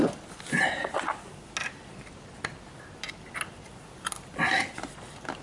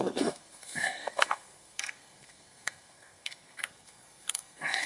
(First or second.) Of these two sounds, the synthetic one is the second